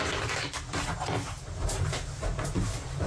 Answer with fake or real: real